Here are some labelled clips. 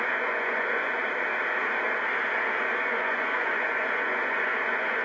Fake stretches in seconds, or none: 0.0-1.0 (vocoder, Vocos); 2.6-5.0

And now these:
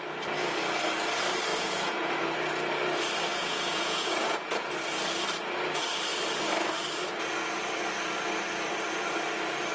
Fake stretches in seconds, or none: 1.5-2.1 (vocoder, Vocos); 3.3-4.7